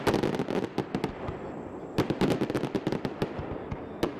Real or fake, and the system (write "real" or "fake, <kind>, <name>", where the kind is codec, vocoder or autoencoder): real